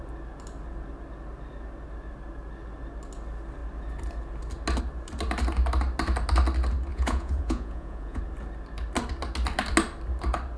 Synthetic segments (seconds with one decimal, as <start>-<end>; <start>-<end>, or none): 6.9-8.2